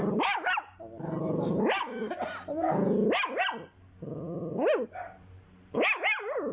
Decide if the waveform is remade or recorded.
recorded